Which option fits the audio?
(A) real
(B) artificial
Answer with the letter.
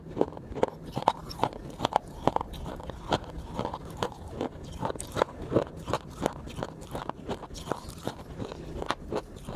A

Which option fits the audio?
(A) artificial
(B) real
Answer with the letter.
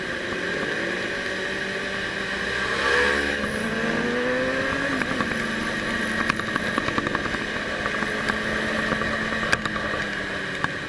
B